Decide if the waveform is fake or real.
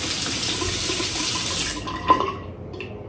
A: real